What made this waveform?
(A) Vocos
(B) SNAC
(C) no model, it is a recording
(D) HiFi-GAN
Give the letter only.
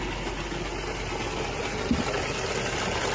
C